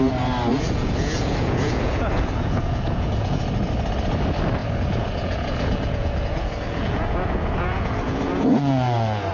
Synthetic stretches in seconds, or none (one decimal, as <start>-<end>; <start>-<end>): 0.5-3.4; 4.6-9.3